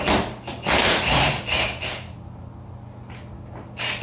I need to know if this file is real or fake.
real